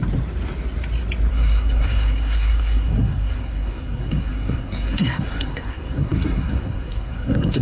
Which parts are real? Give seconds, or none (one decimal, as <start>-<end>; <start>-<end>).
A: 0.0-1.3